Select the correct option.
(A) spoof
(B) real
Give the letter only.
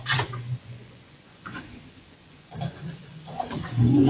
A